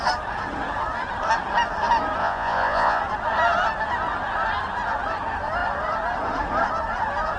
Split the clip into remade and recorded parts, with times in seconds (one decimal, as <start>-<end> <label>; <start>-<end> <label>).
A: 0.0-2.2 recorded; 2.2-3.0 remade; 3.0-7.4 recorded